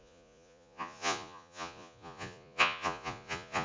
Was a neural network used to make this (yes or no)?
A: yes